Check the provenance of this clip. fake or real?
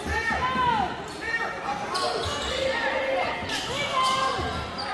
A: real